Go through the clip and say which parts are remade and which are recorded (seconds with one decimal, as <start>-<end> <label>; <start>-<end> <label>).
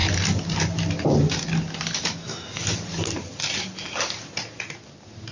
0.0-5.3 recorded